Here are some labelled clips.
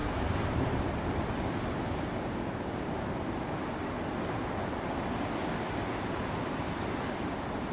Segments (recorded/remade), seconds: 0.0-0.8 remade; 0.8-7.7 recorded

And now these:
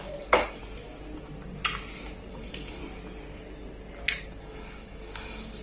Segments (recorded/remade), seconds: 0.0-0.6 remade; 0.6-2.3 recorded; 2.3-2.8 remade; 2.8-4.4 recorded; 4.4-5.6 remade

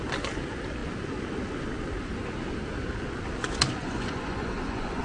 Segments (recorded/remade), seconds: 0.0-3.8 recorded; 3.8-5.0 remade